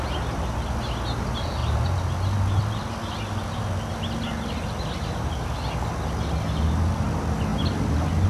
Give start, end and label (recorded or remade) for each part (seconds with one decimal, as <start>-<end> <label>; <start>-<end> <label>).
0.0-8.3 recorded